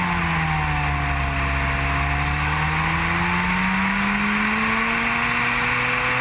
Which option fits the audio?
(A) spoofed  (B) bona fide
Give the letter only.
B